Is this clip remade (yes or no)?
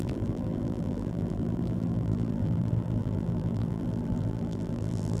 yes